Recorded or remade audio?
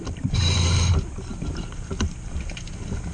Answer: recorded